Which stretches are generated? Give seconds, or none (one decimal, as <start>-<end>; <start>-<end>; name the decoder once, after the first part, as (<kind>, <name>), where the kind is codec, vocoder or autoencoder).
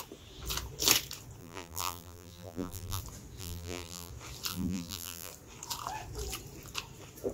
1.4-3.0 (vocoder, BigVGAN v2); 3.4-4.1; 4.5-5.3